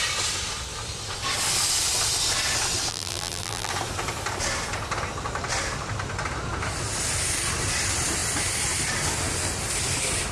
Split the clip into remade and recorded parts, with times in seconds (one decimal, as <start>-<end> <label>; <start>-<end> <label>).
0.0-2.9 recorded; 2.9-3.7 remade; 3.7-10.3 recorded